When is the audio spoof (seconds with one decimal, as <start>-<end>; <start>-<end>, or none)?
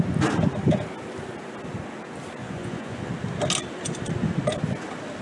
2.4-3.1